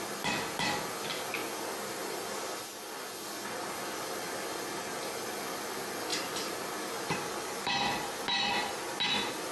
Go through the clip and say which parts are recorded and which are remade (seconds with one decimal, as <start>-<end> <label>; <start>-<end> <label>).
0.0-6.1 recorded; 6.1-8.2 remade; 8.2-9.5 recorded